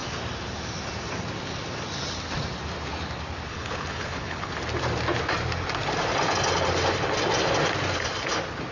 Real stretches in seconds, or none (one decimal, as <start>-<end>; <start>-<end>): 0.0-3.5; 4.5-8.7